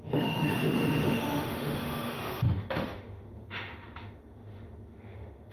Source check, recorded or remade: remade